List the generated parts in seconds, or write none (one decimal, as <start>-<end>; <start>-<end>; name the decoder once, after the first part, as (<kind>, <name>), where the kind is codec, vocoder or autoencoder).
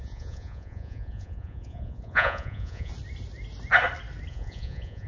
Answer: 0.0-2.9 (vocoder, Vocos); 4.3-5.1